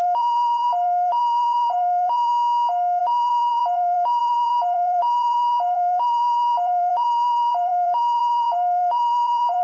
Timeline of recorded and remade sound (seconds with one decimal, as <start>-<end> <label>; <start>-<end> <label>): 0.0-2.3 remade; 2.3-3.0 recorded; 3.0-9.6 remade